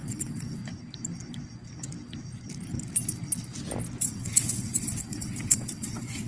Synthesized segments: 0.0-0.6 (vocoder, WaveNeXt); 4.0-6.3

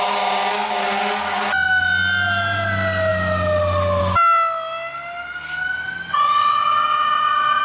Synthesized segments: 6.1-7.6 (vocoder, WaveNeXt)

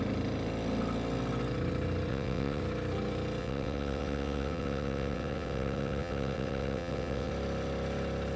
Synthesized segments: 2.1-2.6 (vocoder, WaveNeXt); 3.4-7.3

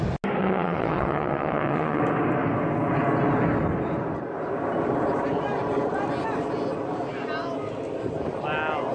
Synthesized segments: 0.4-2.0 (vocoder, WaveNeXt)